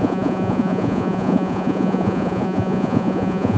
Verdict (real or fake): fake